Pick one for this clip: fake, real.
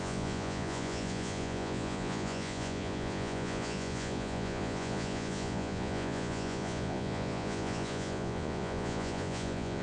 fake